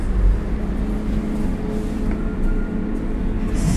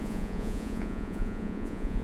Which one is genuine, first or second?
first